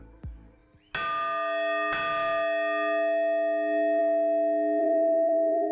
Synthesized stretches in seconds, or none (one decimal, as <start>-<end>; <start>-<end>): 4.8-5.7